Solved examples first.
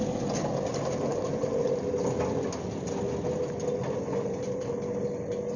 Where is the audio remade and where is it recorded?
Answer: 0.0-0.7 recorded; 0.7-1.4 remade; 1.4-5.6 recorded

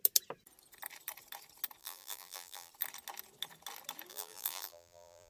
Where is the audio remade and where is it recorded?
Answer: 0.0-1.8 recorded; 1.8-2.7 remade; 2.7-4.1 recorded; 4.1-5.3 remade

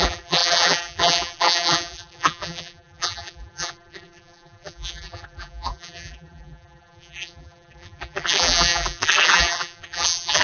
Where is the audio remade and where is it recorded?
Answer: 0.0-10.4 remade

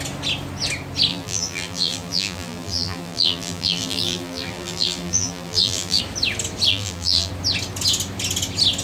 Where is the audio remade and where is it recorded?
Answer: 0.0-1.1 recorded; 1.1-6.0 remade; 6.0-6.7 recorded; 6.7-7.3 remade; 7.3-8.8 recorded

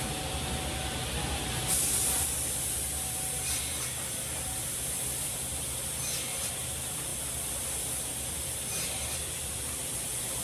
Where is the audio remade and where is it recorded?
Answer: 0.0-5.5 remade; 5.5-6.5 recorded; 6.5-7.1 remade; 7.1-8.6 recorded; 8.6-10.4 remade